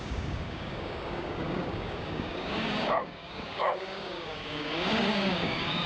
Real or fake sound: fake